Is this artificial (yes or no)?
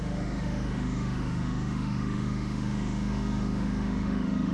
yes